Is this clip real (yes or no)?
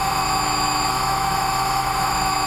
no